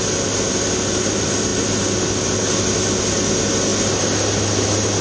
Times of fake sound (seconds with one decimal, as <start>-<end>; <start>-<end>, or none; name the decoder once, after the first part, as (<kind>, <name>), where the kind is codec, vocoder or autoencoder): none